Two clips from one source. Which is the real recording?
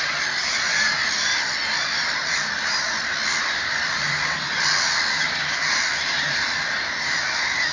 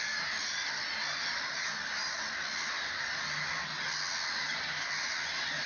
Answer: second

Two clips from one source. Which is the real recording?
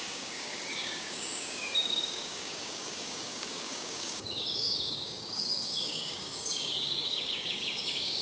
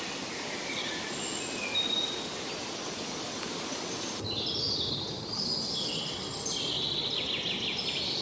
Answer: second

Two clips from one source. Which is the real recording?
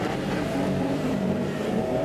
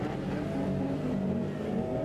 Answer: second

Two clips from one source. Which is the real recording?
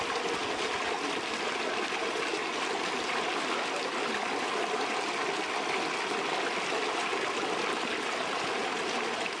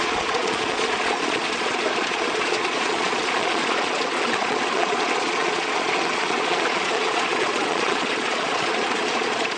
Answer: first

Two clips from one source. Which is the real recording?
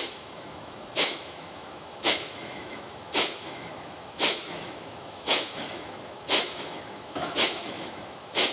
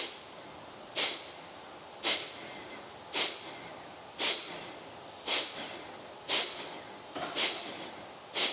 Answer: second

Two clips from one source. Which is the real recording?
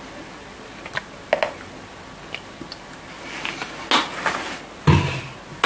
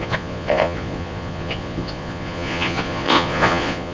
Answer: first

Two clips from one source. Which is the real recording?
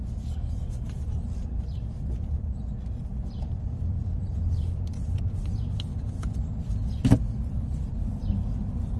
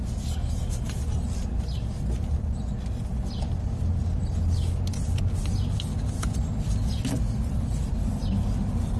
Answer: second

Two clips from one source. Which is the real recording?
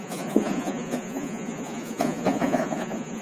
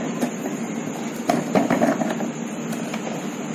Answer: second